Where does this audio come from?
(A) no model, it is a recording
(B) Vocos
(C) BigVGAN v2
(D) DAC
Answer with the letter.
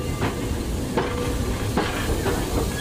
A